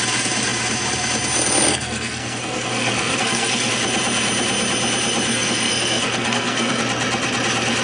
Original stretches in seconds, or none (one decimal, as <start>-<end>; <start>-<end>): 0.0-1.7; 3.7-5.3; 6.8-7.8